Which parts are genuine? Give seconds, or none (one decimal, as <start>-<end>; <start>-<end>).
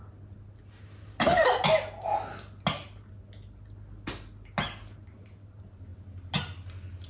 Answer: 0.0-7.1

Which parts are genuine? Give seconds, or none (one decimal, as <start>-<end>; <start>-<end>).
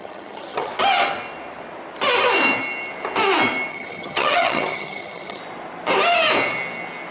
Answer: 0.7-3.7; 5.4-7.1